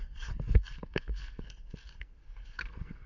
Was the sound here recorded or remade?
remade